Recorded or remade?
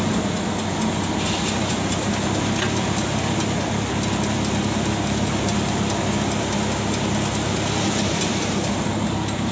recorded